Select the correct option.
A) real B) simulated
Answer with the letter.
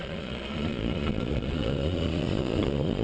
B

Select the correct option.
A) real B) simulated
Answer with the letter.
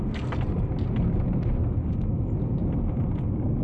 A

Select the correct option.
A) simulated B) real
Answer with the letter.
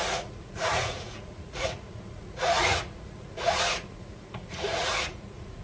A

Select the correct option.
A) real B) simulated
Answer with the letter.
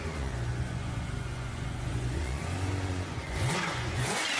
B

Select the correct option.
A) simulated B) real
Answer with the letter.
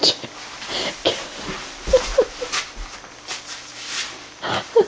B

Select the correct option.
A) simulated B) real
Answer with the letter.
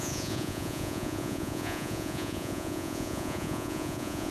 A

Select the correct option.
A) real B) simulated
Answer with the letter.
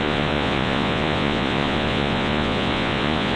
B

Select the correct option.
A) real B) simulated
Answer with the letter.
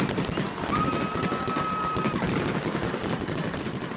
A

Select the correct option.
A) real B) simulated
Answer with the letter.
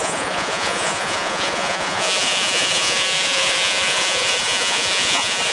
B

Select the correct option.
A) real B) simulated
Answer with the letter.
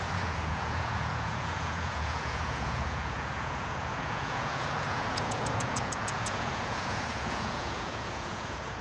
B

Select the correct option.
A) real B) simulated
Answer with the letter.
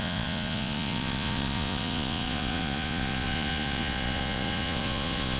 B